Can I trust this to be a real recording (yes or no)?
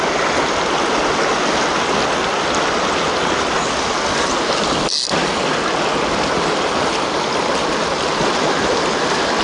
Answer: yes